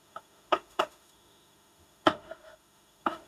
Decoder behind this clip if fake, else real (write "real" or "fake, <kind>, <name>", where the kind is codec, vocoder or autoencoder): fake, autoencoder, DAC-VAE